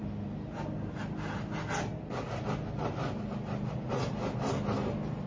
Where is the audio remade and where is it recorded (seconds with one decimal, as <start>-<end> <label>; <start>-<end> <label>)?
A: 0.0-5.3 recorded